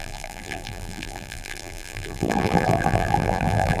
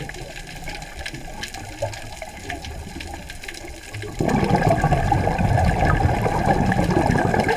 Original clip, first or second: second